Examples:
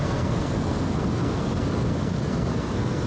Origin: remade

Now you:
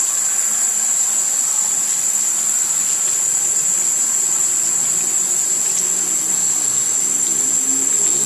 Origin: recorded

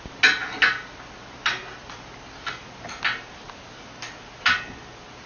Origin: recorded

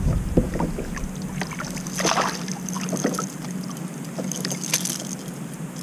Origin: recorded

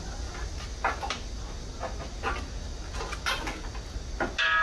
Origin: recorded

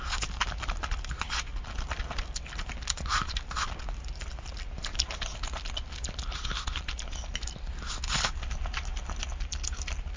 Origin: recorded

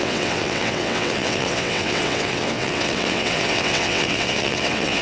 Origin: remade